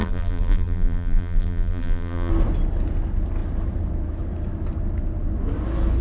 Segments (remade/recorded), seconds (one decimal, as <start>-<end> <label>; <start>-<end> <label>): 0.0-2.3 remade; 2.3-6.0 recorded